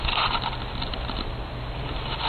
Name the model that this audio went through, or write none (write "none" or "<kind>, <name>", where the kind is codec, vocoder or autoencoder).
none